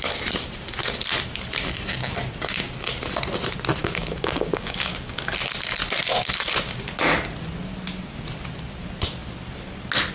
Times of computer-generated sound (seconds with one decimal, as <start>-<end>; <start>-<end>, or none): 3.8-5.3